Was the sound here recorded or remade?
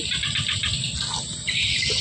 recorded